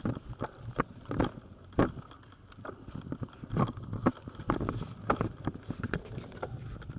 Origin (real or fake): real